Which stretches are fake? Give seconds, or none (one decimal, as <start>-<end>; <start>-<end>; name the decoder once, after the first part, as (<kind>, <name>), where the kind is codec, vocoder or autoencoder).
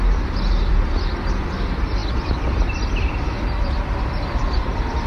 0.0-5.1 (vocoder, BigVGAN v2)